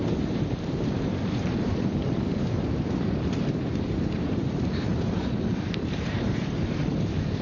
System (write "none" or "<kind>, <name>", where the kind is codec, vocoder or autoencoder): vocoder, BigVGAN v2